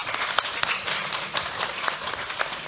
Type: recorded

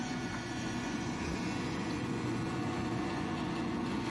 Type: remade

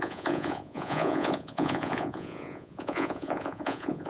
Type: remade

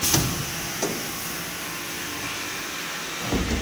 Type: recorded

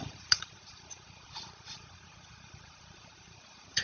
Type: remade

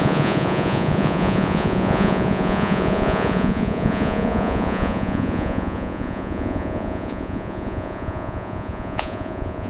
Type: remade